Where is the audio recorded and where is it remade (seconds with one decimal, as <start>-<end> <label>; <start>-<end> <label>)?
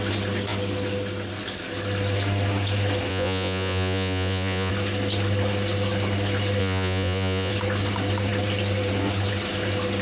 0.0-3.1 recorded; 3.1-4.7 remade; 4.7-6.6 recorded; 6.6-7.5 remade; 7.5-10.0 recorded